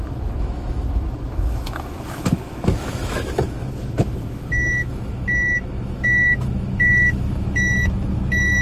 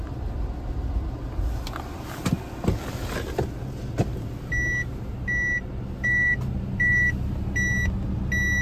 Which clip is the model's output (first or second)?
first